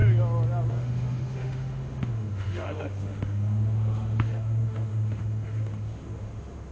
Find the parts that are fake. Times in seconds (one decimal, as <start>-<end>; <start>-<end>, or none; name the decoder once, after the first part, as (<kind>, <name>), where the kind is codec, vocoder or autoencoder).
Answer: 0.7-6.7 (autoencoder, DAC-VAE)